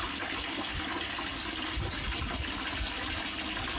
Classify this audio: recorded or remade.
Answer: recorded